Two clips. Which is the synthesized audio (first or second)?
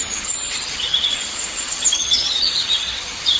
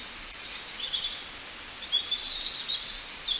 first